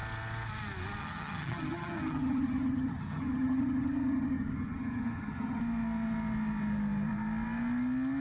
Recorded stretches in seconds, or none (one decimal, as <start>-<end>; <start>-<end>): 0.0-1.0; 5.6-8.2